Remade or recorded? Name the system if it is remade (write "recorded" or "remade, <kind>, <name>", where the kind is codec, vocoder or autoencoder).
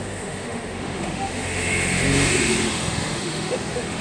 remade, autoencoder, DAC-VAE